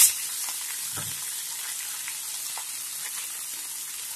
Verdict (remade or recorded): recorded